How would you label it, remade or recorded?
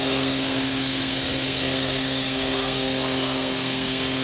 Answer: remade